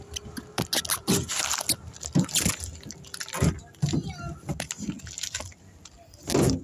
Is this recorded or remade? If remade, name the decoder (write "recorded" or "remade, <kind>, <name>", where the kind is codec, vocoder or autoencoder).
recorded